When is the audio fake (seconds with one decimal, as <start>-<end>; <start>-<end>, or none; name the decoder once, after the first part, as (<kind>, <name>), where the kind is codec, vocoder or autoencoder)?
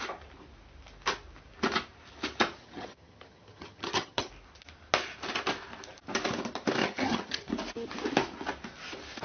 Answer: 2.6-4.3 (vocoder, HiFi-GAN); 6.8-7.5